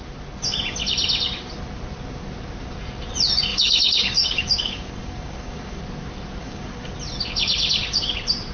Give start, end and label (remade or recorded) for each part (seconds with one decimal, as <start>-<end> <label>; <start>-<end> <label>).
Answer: 0.0-3.5 recorded; 3.5-5.8 remade; 5.8-6.4 recorded; 6.4-6.9 remade; 6.9-8.5 recorded